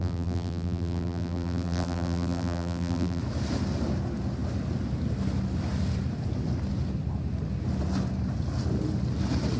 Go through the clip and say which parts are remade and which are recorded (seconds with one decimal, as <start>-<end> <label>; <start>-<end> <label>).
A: 0.0-3.2 remade; 3.2-9.6 recorded